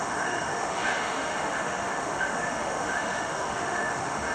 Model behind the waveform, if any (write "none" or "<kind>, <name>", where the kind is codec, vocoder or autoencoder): autoencoder, DAC-VAE